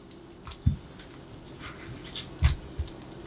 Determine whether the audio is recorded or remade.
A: recorded